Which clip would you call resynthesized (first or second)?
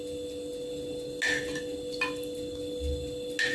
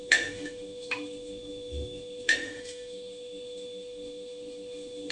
second